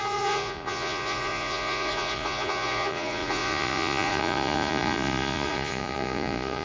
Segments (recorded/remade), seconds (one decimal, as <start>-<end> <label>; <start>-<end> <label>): 0.0-6.6 remade